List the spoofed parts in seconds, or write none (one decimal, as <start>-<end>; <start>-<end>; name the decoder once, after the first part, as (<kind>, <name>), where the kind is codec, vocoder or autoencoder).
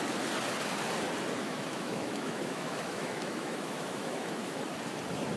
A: 1.4-4.6 (autoencoder, DAC-VAE)